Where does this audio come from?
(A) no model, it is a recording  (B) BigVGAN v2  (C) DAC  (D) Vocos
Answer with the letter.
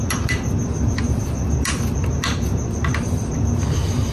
A